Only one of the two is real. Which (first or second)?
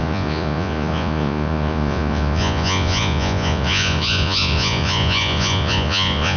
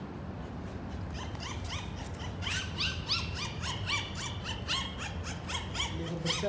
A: second